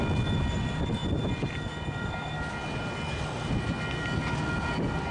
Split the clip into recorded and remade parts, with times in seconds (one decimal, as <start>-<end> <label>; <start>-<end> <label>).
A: 0.0-5.1 recorded

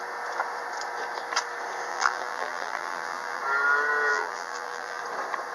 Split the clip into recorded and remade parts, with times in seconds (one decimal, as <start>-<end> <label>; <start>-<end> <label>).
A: 0.0-1.9 recorded; 1.9-3.4 remade; 3.4-4.1 recorded; 4.1-5.0 remade; 5.0-5.5 recorded

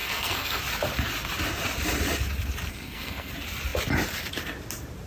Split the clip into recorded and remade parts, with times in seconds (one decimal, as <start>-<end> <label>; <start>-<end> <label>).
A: 0.0-0.6 remade; 0.6-2.7 recorded; 2.7-3.3 remade; 3.3-5.1 recorded

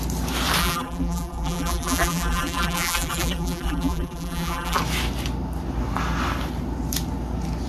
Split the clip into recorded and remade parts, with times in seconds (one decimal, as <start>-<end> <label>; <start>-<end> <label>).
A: 0.0-0.6 recorded; 0.6-4.8 remade; 4.8-7.7 recorded

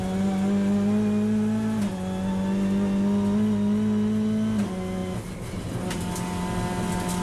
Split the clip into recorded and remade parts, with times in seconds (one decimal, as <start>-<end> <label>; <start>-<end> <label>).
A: 0.0-7.2 recorded